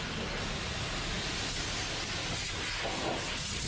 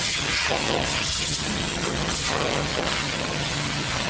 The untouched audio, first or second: first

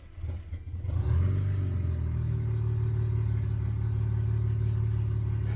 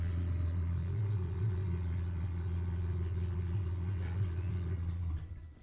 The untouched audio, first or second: first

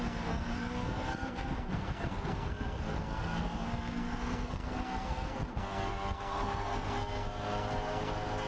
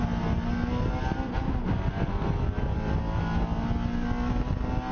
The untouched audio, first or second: second